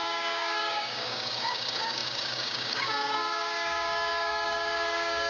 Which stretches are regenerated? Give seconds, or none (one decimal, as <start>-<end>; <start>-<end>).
0.0-5.3